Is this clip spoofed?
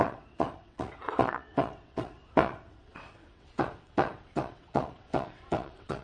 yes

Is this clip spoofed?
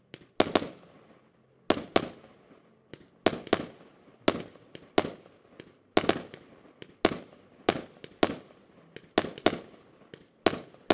no